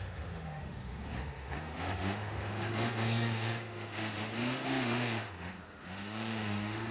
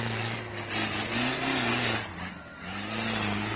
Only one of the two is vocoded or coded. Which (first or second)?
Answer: first